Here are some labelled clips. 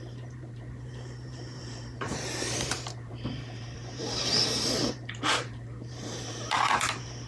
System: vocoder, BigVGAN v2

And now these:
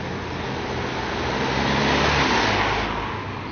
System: none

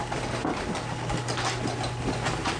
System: none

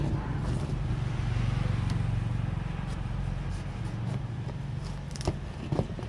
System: none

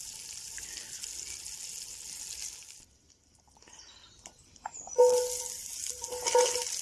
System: none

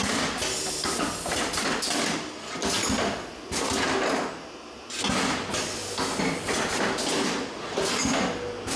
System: none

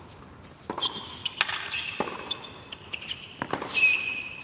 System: none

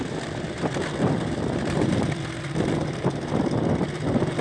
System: vocoder, BigVGAN v2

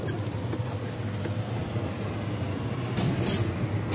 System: none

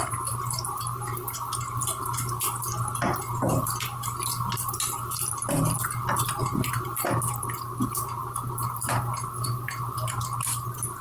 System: none